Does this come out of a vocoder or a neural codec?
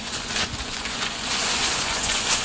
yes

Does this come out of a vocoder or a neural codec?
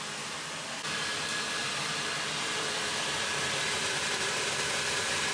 no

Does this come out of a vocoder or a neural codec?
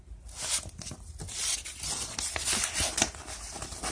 no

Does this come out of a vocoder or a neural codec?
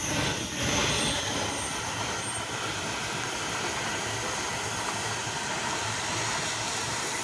no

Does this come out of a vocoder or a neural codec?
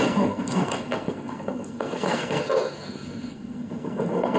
yes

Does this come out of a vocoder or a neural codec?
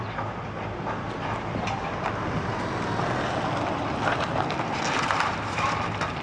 no